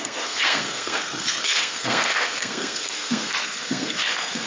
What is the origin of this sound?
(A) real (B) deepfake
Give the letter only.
B